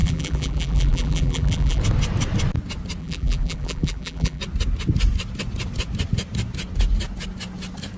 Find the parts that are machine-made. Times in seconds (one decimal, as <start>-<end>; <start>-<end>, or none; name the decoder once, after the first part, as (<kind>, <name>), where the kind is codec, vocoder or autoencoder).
0.0-1.8 (vocoder, BigVGAN v2); 3.0-4.4